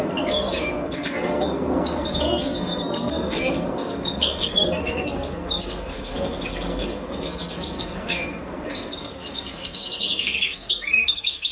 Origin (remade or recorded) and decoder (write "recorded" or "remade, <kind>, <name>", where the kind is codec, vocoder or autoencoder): remade, codec, SNAC